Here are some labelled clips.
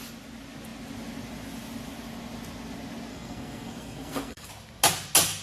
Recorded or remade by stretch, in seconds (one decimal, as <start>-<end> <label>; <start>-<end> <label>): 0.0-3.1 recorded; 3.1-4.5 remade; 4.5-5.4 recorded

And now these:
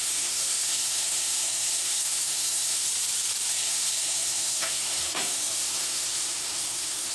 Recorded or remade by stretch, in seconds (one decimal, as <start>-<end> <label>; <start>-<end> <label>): 0.0-2.9 remade; 2.9-3.5 recorded; 3.5-7.1 remade

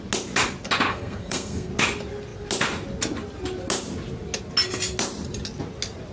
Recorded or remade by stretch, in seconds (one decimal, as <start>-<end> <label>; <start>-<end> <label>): 0.0-0.9 recorded; 0.9-1.7 remade; 1.7-6.1 recorded

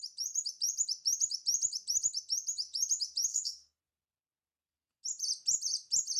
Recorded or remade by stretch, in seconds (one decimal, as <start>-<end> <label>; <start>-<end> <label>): 0.0-3.3 recorded; 3.3-3.8 remade; 3.8-6.2 recorded

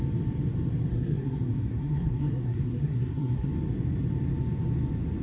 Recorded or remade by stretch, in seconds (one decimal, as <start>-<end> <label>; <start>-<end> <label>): 0.0-0.9 recorded; 0.9-3.5 remade; 3.5-5.2 recorded

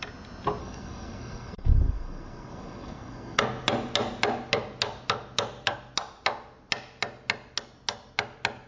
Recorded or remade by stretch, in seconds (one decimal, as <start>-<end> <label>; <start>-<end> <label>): 0.0-0.6 recorded; 0.6-3.4 remade; 3.4-8.7 recorded

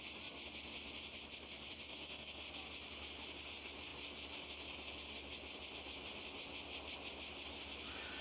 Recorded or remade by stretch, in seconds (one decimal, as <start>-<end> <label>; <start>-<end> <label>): 0.0-1.9 recorded; 1.9-2.4 remade; 2.4-8.2 recorded

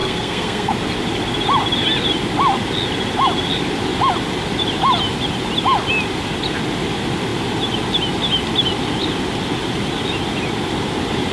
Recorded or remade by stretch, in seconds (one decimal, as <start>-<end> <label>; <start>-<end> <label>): 0.0-0.7 remade; 0.7-11.3 recorded